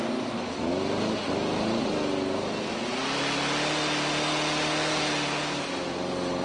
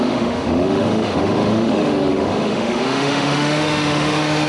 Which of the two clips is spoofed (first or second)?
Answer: second